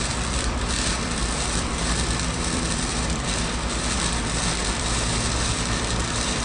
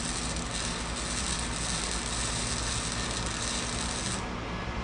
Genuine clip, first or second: second